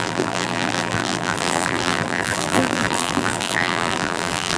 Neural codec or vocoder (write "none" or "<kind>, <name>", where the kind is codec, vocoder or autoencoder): vocoder, BigVGAN v2